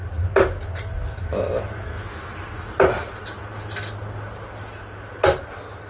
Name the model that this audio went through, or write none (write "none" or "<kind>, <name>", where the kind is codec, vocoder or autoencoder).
none